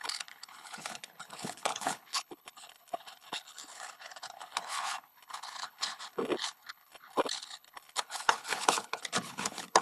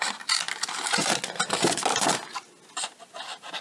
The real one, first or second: second